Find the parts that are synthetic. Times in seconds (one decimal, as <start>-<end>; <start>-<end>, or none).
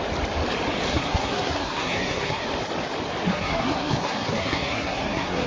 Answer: 0.9-2.5; 3.3-5.5